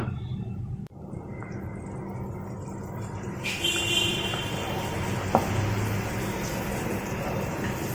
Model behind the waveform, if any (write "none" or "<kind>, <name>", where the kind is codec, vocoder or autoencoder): none